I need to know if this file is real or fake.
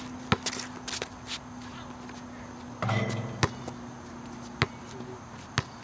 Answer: real